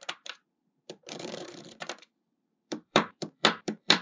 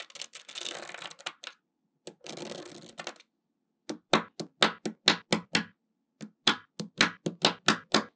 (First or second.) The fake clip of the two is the first